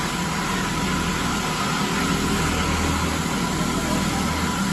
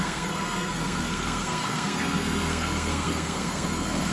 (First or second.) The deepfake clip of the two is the second